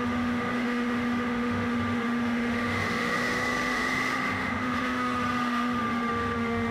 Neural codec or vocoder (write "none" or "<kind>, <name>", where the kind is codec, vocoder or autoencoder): autoencoder, DAC-VAE